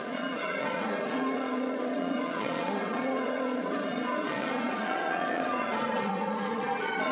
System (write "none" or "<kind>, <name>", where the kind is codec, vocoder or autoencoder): vocoder, Vocos